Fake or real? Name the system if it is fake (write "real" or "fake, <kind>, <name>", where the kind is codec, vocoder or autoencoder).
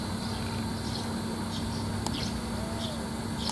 real